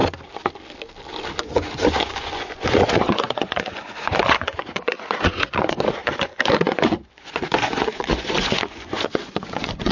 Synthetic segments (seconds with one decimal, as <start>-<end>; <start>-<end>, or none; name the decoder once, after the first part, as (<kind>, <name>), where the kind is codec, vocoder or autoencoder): 1.4-9.9 (vocoder, Vocos)